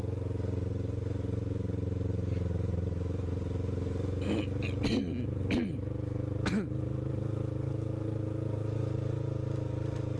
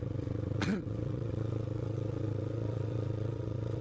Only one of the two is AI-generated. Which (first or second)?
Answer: second